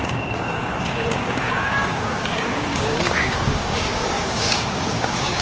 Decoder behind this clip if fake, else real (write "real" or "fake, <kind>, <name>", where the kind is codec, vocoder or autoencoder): fake, codec, DAC